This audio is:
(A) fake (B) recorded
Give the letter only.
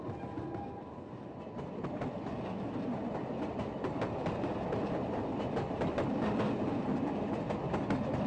B